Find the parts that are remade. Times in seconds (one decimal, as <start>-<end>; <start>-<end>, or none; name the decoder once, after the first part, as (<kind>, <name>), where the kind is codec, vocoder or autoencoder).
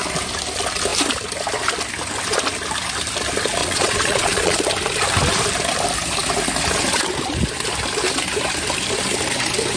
3.6-4.6 (vocoder, Vocos)